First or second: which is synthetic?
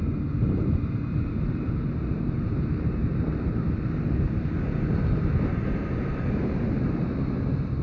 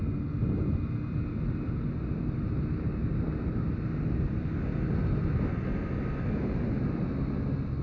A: first